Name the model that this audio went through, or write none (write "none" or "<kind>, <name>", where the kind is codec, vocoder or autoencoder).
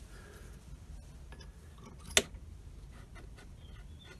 none